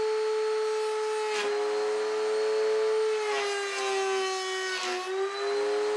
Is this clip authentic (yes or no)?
yes